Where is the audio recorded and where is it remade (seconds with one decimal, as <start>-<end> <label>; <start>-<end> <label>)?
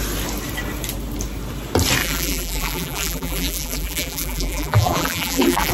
0.0-2.0 recorded; 2.0-5.7 remade